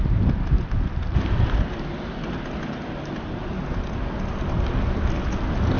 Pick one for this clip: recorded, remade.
recorded